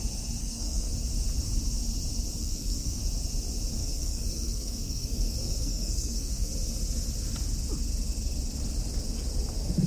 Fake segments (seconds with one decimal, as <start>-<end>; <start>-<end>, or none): 0.4-0.9; 2.4-3.0; 3.8-6.5